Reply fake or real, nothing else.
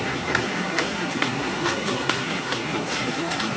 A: fake